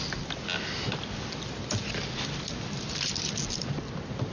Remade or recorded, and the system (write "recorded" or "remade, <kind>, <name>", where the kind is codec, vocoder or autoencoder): recorded